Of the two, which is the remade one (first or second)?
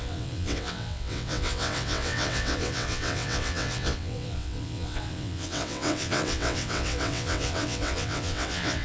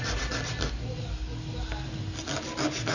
first